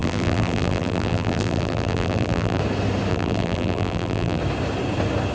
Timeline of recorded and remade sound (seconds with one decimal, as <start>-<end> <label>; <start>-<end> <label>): 0.0-2.6 remade; 2.6-3.1 recorded; 3.1-4.4 remade; 4.4-5.3 recorded